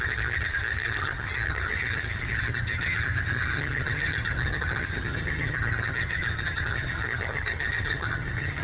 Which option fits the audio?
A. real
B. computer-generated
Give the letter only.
B